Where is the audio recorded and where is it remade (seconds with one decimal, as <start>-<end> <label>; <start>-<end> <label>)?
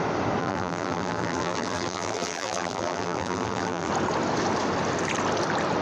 0.0-0.4 recorded; 0.4-3.9 remade; 3.9-5.8 recorded